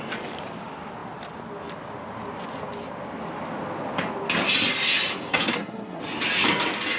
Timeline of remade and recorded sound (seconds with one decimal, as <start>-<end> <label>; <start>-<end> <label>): 0.0-5.3 recorded; 5.3-6.0 remade; 6.0-7.0 recorded